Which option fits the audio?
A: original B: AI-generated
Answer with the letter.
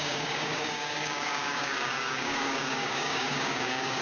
B